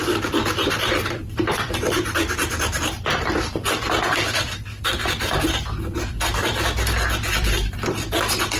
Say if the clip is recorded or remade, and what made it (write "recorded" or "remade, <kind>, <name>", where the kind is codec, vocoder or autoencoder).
remade, vocoder, BigVGAN v2